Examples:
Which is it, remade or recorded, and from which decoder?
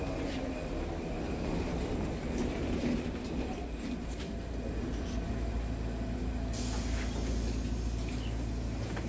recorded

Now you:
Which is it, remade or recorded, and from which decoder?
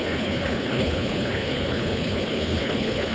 remade, codec, HILCodec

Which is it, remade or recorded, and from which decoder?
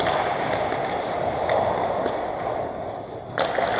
recorded